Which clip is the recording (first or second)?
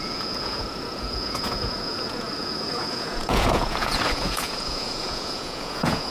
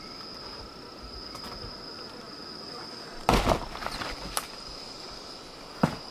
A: second